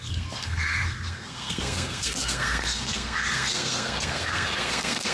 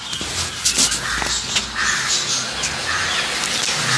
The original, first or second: second